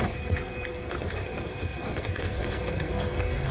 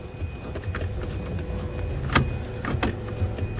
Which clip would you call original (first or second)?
second